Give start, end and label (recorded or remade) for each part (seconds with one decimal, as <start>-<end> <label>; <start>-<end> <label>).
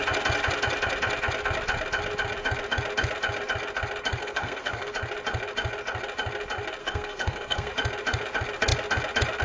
0.0-4.2 recorded; 4.2-4.9 remade; 4.9-6.8 recorded; 6.8-7.7 remade; 7.7-9.4 recorded